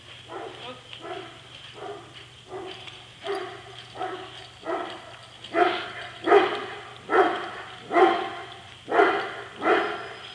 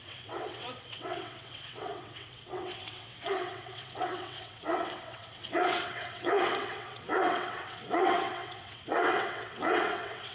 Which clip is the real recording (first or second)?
first